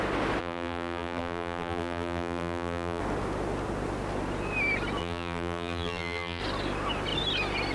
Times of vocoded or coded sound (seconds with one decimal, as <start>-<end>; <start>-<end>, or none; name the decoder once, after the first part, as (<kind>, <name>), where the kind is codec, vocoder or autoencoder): 0.4-3.0 (vocoder, BigVGAN v2); 5.0-6.4

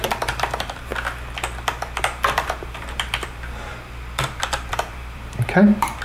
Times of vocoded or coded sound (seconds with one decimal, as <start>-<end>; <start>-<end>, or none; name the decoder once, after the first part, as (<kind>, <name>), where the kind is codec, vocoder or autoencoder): 0.0-0.9 (vocoder, BigVGAN v2); 2.0-3.7; 4.4-6.0

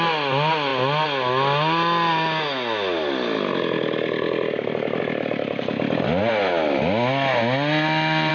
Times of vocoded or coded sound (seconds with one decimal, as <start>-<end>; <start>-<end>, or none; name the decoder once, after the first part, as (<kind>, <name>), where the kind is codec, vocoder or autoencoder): none

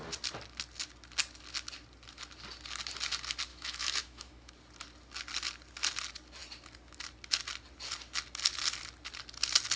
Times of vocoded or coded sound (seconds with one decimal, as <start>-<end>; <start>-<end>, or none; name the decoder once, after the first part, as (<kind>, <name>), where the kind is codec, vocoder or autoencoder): 3.5-4.5 (autoencoder, DAC-VAE)

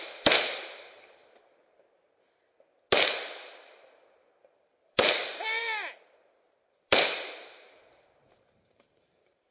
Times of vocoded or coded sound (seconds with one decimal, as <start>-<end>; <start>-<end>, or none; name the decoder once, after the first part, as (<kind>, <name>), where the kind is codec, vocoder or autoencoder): 0.0-1.2 (vocoder, BigVGAN v2); 4.5-5.6; 6.7-9.5

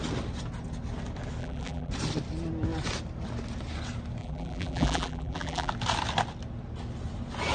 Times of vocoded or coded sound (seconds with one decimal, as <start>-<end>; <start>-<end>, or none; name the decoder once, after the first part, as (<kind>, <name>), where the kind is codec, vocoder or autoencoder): 1.4-1.9 (vocoder, BigVGAN v2); 4.2-5.7